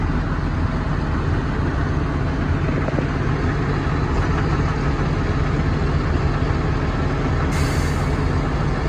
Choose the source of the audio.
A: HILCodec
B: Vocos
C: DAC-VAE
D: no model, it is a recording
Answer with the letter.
D